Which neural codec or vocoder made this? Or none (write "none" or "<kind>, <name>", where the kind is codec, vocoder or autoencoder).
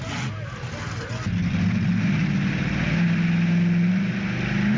none